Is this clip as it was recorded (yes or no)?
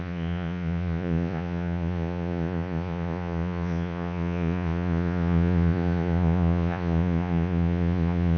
no